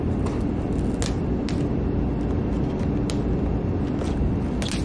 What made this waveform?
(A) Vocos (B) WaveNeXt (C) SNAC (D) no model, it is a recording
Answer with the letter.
D